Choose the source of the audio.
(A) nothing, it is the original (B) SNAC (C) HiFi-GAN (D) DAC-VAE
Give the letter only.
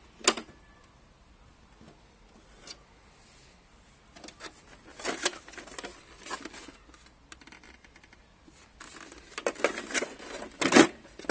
A